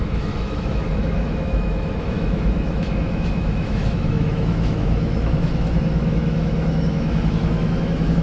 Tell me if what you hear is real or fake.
fake